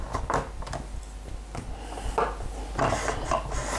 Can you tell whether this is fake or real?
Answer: real